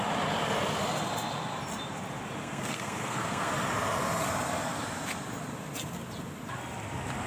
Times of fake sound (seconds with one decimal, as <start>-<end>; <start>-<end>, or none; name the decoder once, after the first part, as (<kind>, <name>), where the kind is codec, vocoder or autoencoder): 2.4-3.5 (codec, SNAC)